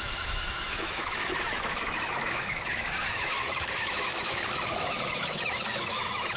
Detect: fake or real fake